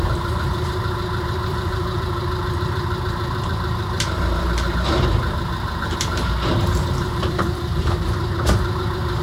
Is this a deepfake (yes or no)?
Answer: yes